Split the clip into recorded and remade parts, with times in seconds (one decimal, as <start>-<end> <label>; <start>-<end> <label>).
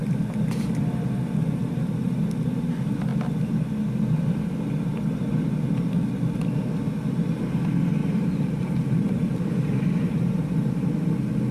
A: 0.0-8.0 recorded; 8.0-10.9 remade; 10.9-11.5 recorded